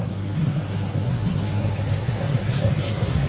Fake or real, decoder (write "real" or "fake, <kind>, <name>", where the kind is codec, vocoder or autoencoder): fake, codec, SNAC